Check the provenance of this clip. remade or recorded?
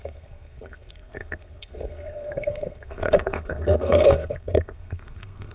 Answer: remade